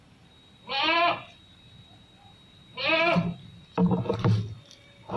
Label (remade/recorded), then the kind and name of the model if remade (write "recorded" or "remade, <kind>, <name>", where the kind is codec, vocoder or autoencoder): recorded